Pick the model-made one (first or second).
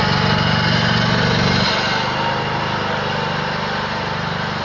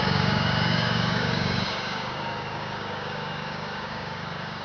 second